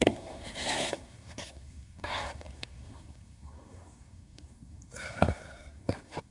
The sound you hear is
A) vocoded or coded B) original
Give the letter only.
A